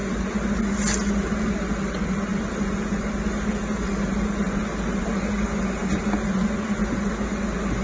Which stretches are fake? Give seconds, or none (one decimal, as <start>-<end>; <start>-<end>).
none

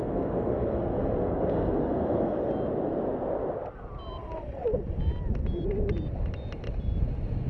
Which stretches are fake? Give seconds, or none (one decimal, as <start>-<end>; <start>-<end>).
0.0-2.5

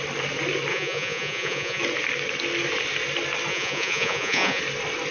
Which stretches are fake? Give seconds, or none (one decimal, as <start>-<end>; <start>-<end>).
0.7-1.8; 3.5-4.6

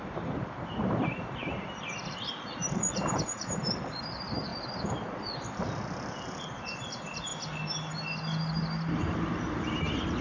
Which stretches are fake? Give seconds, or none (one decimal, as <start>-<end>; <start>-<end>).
0.0-4.5; 6.1-7.3; 8.9-10.2